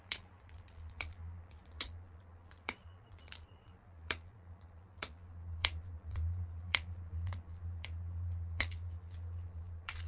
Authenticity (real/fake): fake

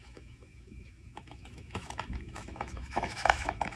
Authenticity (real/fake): fake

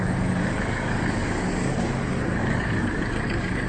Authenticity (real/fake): fake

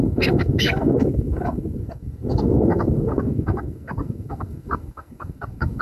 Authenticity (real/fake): fake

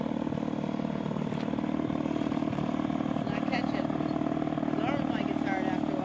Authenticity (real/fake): real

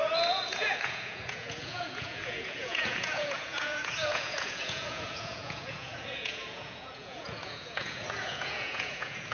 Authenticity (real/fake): fake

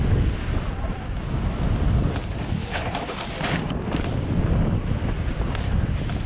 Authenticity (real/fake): real